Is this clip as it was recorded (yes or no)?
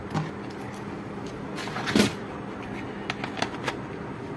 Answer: yes